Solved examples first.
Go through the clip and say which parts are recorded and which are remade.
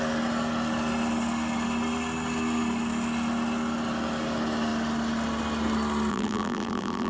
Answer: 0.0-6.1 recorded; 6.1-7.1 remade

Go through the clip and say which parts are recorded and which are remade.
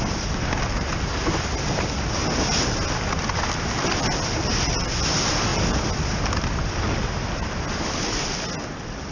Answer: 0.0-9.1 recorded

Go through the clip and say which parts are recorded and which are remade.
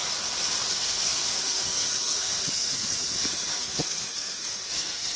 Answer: 0.0-0.7 recorded; 0.7-5.2 remade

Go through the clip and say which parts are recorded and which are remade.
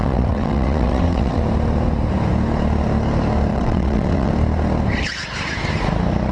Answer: 0.0-1.4 remade; 1.4-3.5 recorded; 3.5-4.3 remade; 4.3-6.3 recorded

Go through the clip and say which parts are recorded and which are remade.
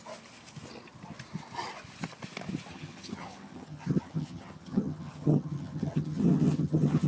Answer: 0.0-2.7 recorded; 2.7-7.1 remade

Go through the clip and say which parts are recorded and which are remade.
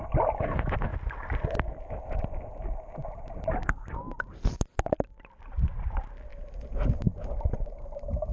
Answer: 0.0-8.3 recorded